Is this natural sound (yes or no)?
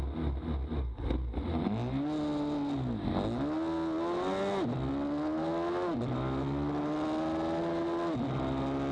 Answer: yes